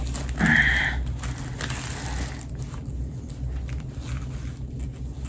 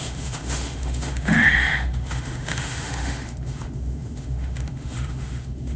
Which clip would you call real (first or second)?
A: first